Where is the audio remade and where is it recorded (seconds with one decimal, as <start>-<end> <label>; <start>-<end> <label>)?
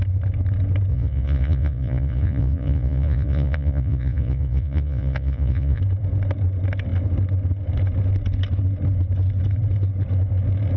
0.0-0.9 recorded; 0.9-5.8 remade; 5.8-10.8 recorded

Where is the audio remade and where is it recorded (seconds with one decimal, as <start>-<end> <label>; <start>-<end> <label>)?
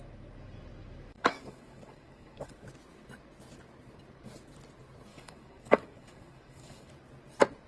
0.0-1.1 recorded; 1.1-2.5 remade; 2.5-5.1 recorded; 5.1-6.9 remade; 6.9-7.7 recorded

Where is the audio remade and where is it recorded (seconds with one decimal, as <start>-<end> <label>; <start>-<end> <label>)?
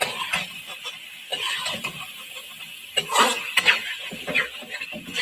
0.0-5.2 recorded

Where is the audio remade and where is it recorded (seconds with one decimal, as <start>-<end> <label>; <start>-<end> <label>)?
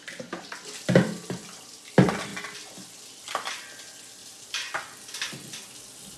0.0-4.2 recorded; 4.2-4.7 remade; 4.7-6.2 recorded